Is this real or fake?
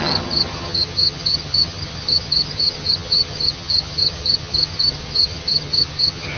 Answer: fake